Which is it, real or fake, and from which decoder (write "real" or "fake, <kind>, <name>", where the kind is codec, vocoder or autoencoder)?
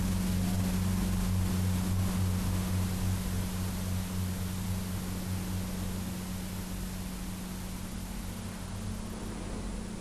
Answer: real